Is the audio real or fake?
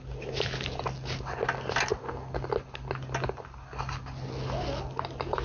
real